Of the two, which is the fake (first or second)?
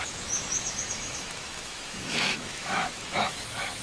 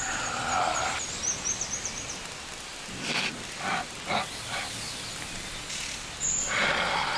first